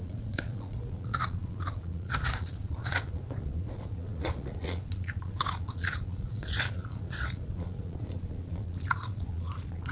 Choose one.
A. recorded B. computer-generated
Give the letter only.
B